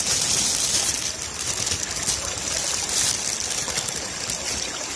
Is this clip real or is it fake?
real